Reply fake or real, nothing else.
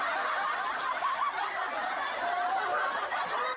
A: real